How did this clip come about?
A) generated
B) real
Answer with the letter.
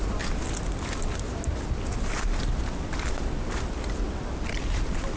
B